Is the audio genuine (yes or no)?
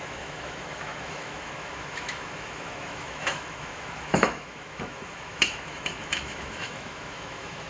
no